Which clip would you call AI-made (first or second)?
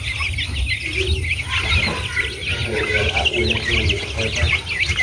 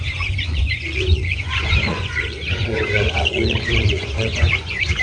second